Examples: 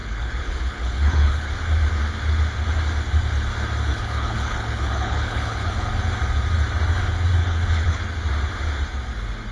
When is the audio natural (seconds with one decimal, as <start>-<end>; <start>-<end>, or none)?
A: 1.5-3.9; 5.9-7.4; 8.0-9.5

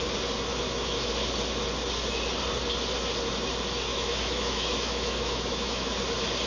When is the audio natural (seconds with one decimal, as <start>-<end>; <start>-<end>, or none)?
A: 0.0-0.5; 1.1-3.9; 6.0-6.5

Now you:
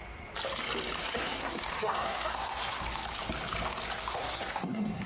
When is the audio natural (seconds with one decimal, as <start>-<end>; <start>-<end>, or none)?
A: 0.0-1.0; 2.8-4.1

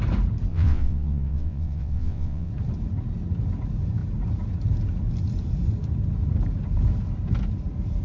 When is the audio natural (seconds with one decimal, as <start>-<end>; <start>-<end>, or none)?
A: 0.0-0.5; 2.5-8.0